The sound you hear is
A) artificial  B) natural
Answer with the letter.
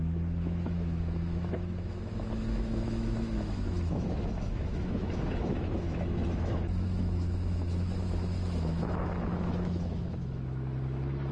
A